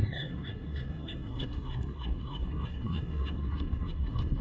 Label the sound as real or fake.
fake